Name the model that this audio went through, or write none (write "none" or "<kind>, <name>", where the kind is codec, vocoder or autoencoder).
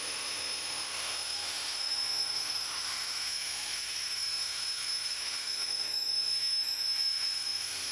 autoencoder, DAC-VAE